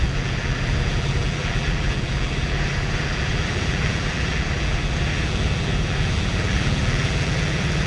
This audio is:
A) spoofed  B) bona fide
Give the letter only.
A